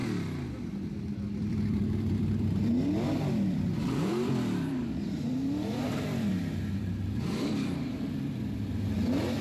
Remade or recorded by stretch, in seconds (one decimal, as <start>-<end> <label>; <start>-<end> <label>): 0.0-9.4 remade